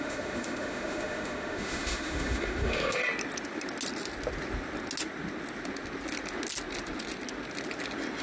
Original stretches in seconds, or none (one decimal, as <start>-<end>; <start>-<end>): 3.0-8.2